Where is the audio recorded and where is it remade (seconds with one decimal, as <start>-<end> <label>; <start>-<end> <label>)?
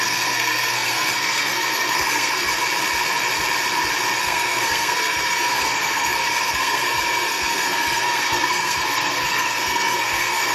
0.0-2.5 remade; 2.5-4.2 recorded; 4.2-10.5 remade